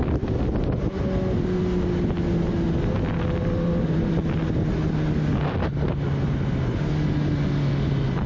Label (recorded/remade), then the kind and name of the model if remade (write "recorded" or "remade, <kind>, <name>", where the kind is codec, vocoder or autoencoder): recorded